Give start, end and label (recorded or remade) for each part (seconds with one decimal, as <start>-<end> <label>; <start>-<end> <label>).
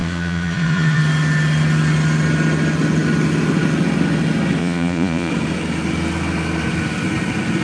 0.0-1.0 remade; 1.0-4.6 recorded; 4.6-5.3 remade; 5.3-7.6 recorded